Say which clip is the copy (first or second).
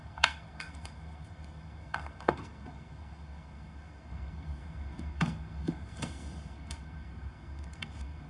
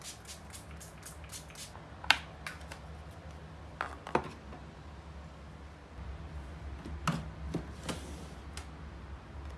first